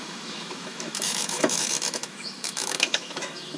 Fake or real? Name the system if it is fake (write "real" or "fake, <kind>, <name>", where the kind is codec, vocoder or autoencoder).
fake, autoencoder, DAC-VAE